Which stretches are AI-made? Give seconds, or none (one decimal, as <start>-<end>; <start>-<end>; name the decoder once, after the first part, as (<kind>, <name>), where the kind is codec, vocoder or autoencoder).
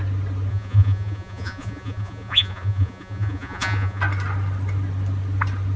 0.5-4.0 (vocoder, Vocos)